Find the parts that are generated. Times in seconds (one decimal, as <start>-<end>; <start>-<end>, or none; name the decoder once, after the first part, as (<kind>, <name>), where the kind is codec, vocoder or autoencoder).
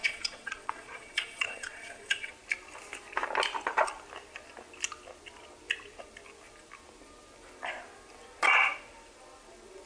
0.0-2.3 (vocoder, Vocos)